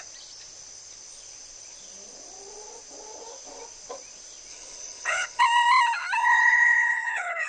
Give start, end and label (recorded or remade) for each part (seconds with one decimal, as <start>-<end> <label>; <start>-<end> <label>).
0.0-4.5 recorded; 4.5-5.4 remade; 5.4-6.2 recorded; 6.2-7.5 remade